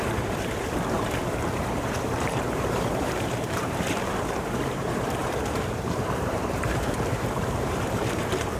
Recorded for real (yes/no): no